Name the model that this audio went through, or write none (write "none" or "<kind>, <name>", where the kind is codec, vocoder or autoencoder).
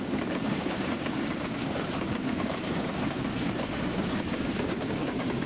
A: codec, DAC